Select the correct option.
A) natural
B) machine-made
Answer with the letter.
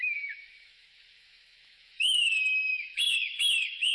B